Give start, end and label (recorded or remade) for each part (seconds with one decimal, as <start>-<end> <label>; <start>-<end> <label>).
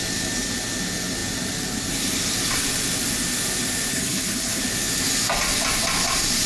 0.0-3.9 recorded; 3.9-4.6 remade; 4.6-6.5 recorded